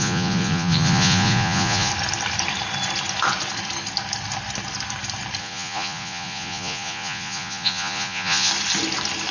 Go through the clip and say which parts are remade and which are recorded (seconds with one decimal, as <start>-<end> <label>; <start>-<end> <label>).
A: 0.0-1.9 remade; 1.9-5.4 recorded; 5.4-8.5 remade; 8.5-9.3 recorded